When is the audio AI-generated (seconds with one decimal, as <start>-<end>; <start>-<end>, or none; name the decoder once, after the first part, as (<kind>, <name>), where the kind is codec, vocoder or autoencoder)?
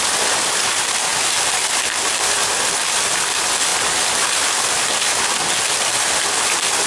none